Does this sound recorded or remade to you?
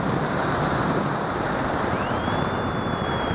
remade